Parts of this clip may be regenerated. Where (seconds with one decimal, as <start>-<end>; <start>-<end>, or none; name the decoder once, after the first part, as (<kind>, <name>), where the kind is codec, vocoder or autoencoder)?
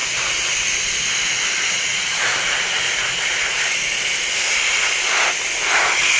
1.7-2.3 (vocoder, Vocos)